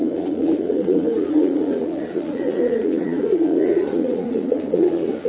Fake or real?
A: fake